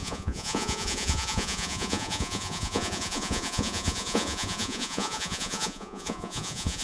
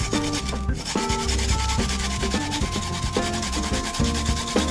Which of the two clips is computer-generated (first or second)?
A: first